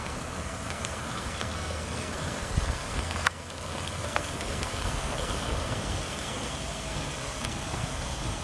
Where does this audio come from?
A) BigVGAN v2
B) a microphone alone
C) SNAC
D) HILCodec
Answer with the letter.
C